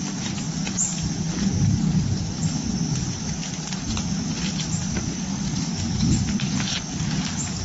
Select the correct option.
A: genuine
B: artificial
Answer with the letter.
A